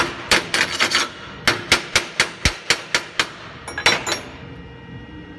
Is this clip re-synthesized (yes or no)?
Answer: no